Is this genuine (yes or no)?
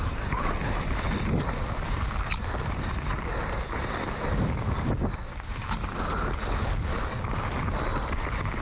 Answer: yes